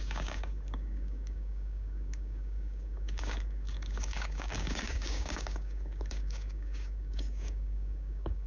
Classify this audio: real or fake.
fake